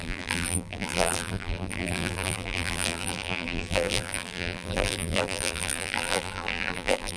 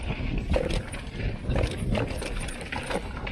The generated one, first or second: first